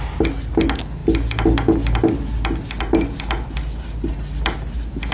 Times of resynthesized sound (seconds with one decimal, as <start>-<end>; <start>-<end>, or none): none